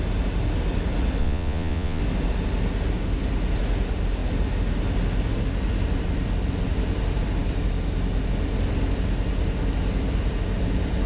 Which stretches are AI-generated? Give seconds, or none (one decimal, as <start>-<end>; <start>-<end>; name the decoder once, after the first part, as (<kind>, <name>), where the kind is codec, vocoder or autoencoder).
1.2-2.0 (vocoder, Vocos)

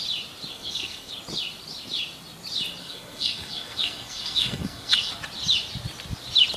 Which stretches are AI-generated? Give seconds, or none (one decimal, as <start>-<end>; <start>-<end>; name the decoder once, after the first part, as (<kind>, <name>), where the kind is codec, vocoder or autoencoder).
0.5-1.1 (codec, SNAC); 2.8-5.1

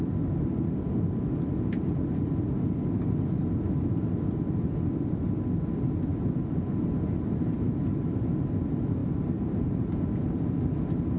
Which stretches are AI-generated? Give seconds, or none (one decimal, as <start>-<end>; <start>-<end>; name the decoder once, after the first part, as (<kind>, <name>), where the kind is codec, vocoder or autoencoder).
none